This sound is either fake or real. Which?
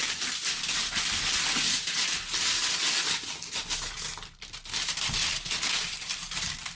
real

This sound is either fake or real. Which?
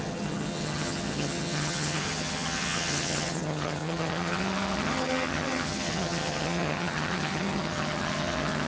fake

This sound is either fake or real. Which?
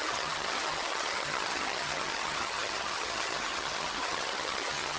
fake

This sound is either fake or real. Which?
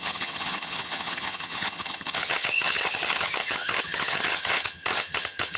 fake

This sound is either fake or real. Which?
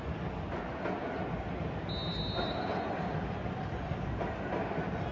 real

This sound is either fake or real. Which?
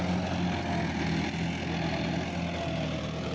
real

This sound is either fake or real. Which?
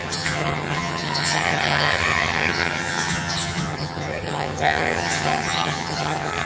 fake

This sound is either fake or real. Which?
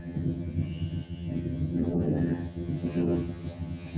fake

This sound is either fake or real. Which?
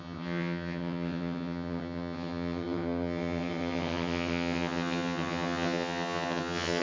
fake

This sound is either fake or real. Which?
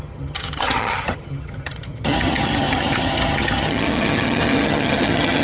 fake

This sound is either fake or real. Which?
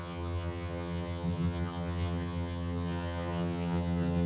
fake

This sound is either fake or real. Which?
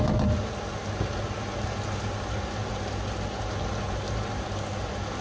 real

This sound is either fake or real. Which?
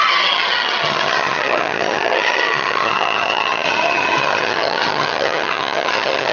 fake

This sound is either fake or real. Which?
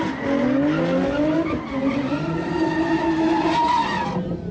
real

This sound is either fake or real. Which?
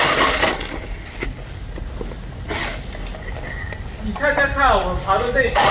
real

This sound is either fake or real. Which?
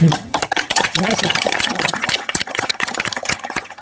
fake